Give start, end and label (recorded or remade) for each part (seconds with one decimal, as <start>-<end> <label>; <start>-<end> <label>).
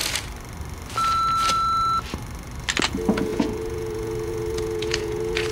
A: 0.0-2.9 recorded; 2.9-5.5 remade